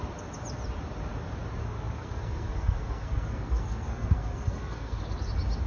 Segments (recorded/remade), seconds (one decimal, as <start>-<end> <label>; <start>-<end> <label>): 0.0-1.6 recorded; 1.6-5.0 remade; 5.0-5.7 recorded